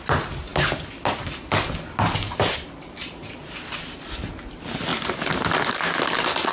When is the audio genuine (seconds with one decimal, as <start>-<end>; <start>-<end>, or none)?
0.0-6.5